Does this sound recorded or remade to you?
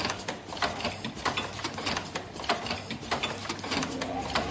recorded